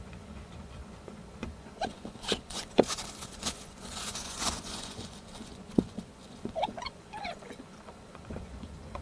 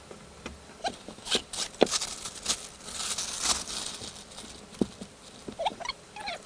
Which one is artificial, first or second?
first